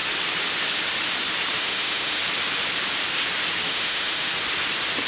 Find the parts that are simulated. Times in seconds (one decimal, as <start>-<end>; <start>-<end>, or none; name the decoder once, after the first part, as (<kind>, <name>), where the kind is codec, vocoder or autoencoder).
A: 1.6-2.2 (autoencoder, DAC-VAE); 3.7-4.3